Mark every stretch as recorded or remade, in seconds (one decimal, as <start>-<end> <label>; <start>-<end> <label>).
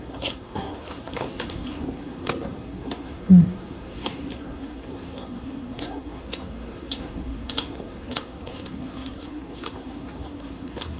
0.0-11.0 remade